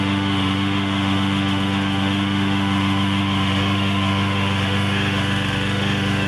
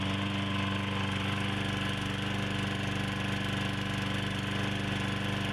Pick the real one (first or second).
second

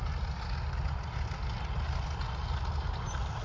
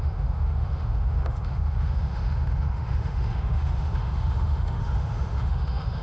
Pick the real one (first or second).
first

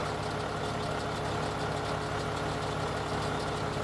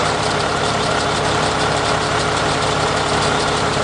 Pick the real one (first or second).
first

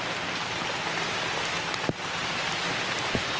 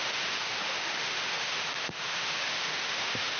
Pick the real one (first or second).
first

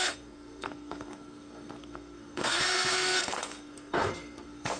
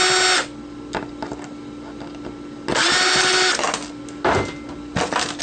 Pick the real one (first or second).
second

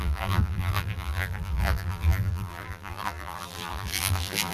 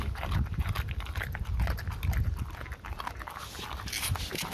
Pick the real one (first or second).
second